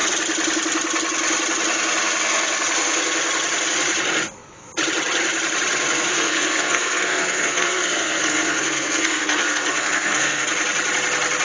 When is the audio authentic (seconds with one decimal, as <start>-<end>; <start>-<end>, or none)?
0.0-6.1; 10.5-11.4